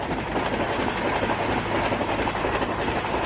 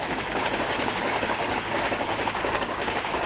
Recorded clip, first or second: first